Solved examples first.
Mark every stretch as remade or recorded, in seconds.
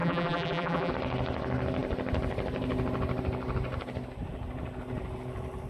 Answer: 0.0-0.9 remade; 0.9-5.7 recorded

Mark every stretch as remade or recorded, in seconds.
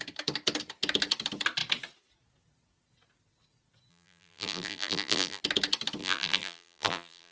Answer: 0.0-3.9 recorded; 3.9-5.4 remade; 5.4-6.0 recorded; 6.0-7.3 remade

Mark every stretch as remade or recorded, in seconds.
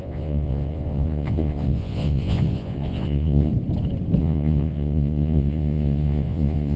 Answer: 0.0-3.5 remade; 3.5-4.2 recorded; 4.2-6.8 remade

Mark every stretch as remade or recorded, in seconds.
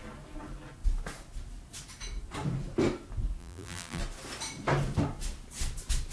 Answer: 0.0-3.4 recorded; 3.4-4.0 remade; 4.0-6.1 recorded